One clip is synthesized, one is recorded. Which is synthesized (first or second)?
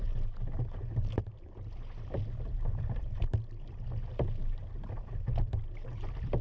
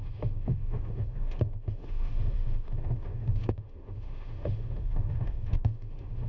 second